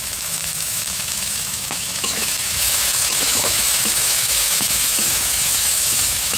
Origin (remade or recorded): remade